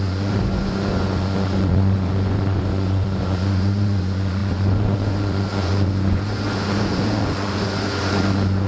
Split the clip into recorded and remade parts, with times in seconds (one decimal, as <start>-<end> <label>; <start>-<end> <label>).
0.0-8.7 remade

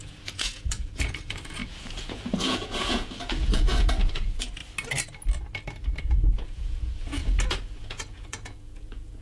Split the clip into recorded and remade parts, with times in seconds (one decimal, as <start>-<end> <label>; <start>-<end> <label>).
0.0-4.6 remade; 4.6-6.0 recorded; 6.0-7.2 remade; 7.2-7.8 recorded; 7.8-9.2 remade

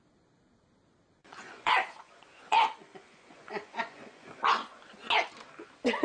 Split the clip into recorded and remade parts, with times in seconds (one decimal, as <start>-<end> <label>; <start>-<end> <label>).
0.0-1.2 recorded; 1.2-4.8 remade; 4.8-6.0 recorded

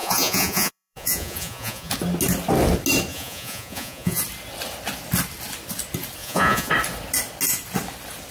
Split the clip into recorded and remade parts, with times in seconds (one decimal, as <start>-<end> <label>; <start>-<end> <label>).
0.0-1.9 remade; 1.9-3.1 recorded; 3.1-4.2 remade; 4.2-6.2 recorded; 6.2-6.7 remade; 6.7-8.3 recorded

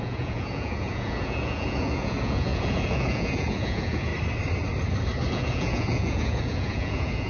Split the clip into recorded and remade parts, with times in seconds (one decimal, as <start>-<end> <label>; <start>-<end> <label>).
0.0-4.1 remade; 4.1-5.3 recorded; 5.3-7.3 remade